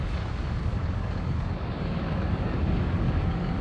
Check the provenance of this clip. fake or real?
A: fake